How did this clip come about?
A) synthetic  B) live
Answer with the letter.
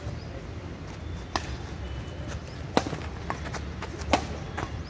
B